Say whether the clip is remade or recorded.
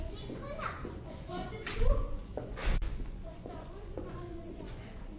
remade